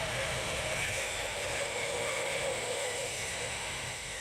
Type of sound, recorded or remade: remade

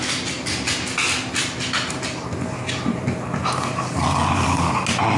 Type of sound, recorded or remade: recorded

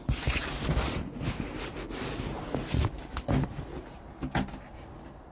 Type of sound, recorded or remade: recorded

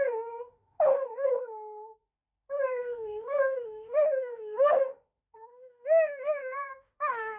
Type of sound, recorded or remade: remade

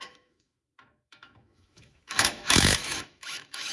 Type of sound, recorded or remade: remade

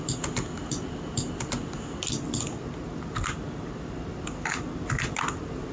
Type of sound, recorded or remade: recorded